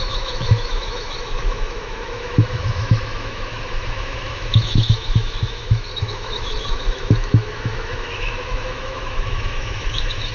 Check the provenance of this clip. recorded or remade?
remade